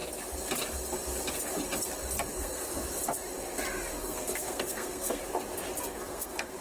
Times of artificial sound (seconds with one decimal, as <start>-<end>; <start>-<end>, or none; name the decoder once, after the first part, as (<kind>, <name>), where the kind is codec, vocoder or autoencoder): 2.3-2.8 (codec, SNAC); 4.0-5.2; 5.9-6.6